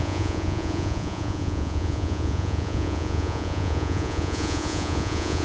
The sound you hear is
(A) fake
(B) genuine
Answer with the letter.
A